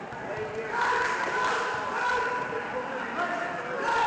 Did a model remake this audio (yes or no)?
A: no